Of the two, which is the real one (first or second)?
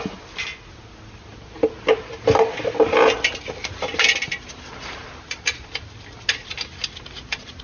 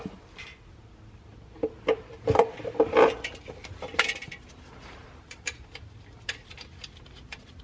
first